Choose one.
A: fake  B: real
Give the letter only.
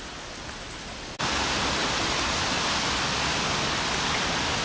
B